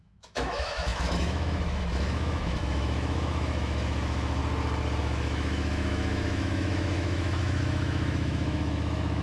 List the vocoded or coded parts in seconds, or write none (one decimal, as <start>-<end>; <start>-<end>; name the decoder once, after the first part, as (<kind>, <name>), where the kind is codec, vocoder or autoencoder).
0.0-4.4 (autoencoder, DAC-VAE); 5.0-9.2